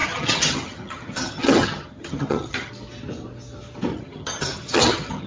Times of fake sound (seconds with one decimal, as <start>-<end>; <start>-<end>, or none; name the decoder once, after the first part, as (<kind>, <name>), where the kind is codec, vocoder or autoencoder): 0.0-2.7 (vocoder, HiFi-GAN); 3.9-5.3